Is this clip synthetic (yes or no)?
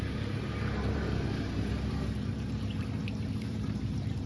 yes